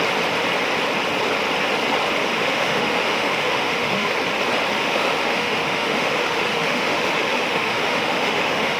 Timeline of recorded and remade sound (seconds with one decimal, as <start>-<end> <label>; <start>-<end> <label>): 0.0-2.2 recorded; 2.2-4.1 remade; 4.1-4.8 recorded; 4.8-8.8 remade